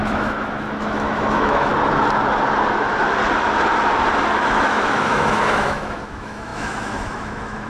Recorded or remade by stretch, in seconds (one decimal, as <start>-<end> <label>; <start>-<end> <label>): 0.0-1.7 remade; 1.7-4.5 recorded; 4.5-7.7 remade